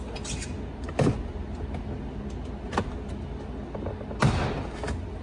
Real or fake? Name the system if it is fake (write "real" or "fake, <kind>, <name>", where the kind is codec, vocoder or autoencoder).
real